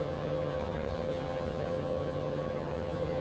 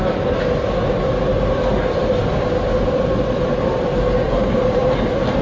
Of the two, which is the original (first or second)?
second